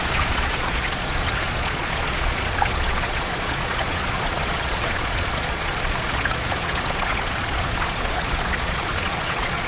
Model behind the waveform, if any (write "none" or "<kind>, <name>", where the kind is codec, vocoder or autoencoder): vocoder, Vocos